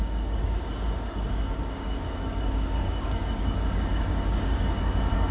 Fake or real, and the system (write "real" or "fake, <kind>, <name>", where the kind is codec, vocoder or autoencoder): fake, codec, DAC